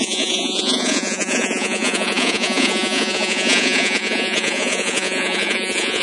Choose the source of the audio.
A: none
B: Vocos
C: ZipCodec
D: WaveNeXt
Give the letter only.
B